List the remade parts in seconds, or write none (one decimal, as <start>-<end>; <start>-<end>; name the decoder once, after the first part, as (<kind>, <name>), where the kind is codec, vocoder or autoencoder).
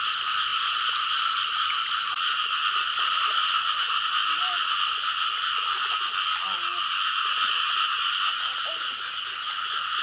0.0-4.2 (vocoder, BigVGAN v2); 8.4-10.0